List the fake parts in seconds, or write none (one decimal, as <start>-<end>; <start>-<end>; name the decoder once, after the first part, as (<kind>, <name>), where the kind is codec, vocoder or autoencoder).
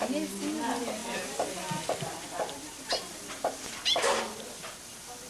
none